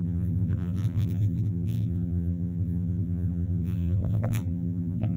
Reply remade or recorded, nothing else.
remade